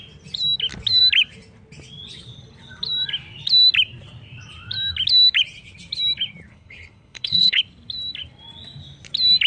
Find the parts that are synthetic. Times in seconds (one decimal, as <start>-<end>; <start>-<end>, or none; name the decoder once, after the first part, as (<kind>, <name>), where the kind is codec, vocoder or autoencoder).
6.5-7.6 (codec, HILCodec)